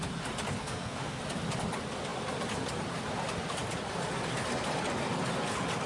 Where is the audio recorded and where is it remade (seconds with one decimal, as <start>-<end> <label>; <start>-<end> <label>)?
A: 0.0-0.6 recorded; 0.6-1.2 remade; 1.2-5.9 recorded